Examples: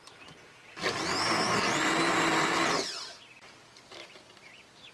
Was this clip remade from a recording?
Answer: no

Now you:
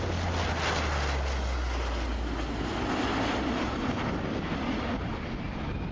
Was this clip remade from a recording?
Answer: no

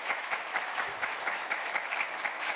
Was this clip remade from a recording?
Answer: yes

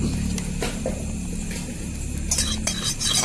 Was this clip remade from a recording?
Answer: no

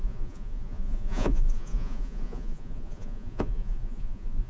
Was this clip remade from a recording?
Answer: yes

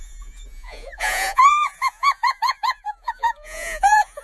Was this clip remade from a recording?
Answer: yes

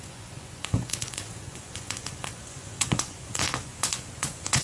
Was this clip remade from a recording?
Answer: yes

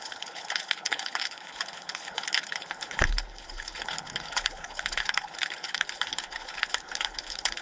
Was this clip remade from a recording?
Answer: yes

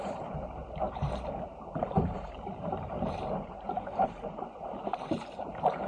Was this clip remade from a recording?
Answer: yes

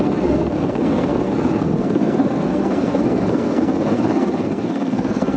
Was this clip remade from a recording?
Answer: yes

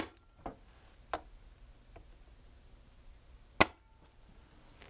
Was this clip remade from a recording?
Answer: no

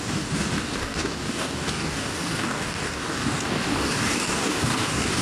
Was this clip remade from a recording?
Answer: yes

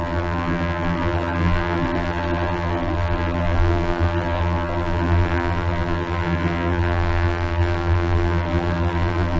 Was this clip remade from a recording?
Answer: yes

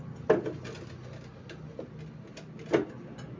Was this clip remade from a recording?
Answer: no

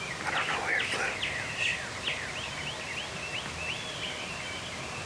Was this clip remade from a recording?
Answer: no